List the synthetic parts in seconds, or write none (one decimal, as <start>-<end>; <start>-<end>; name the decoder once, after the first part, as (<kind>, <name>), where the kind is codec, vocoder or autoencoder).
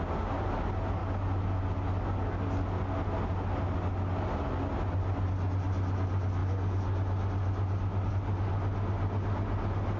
none